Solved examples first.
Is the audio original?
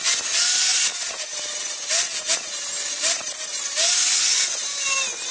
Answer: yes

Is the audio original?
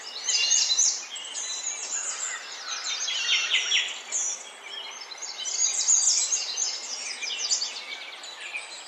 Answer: yes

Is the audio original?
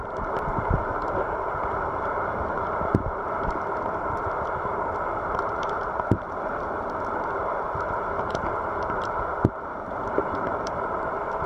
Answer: no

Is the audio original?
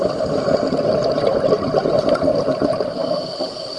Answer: yes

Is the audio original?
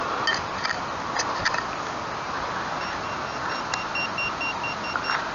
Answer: yes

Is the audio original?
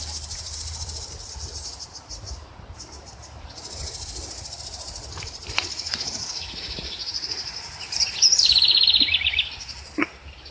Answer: no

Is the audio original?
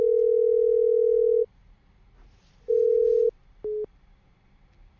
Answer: yes